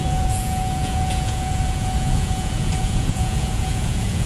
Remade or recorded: remade